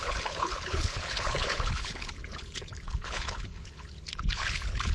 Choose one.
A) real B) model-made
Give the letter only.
B